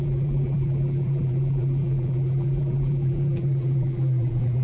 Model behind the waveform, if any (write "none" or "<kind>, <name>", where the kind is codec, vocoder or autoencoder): vocoder, BigVGAN v2